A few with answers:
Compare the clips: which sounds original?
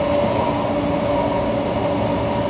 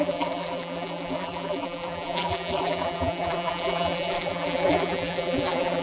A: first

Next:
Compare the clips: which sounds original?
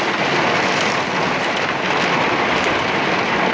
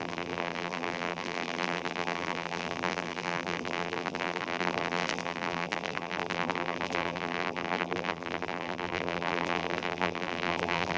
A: first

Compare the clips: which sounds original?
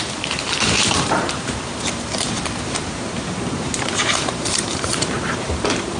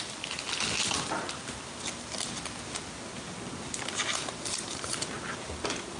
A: second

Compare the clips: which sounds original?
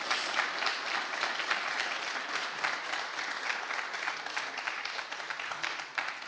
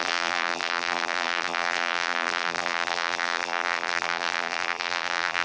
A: first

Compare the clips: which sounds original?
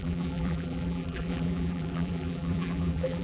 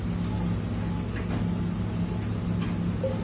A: second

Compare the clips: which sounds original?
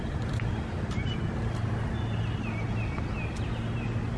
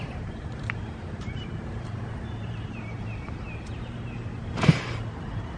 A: first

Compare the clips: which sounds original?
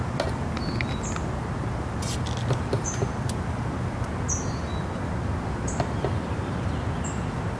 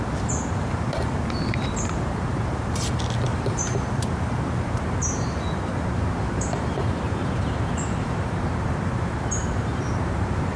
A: first